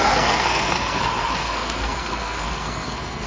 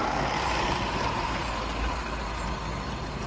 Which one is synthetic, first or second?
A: first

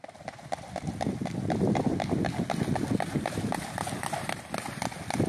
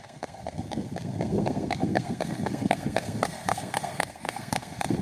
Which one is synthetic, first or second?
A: second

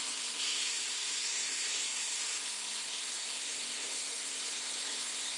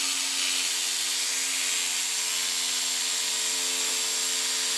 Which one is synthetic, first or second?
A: first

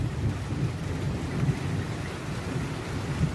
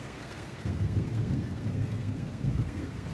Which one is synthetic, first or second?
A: second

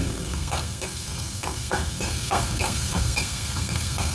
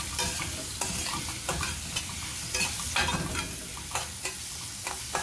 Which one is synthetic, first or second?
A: first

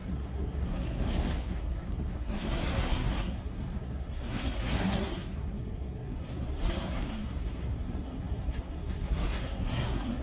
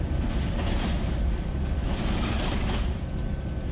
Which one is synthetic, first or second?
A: first